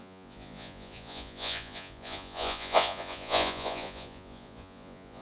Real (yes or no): no